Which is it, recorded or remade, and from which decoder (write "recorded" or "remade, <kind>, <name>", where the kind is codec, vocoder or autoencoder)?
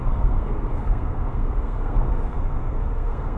remade, codec, SNAC